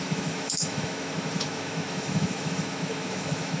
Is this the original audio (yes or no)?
no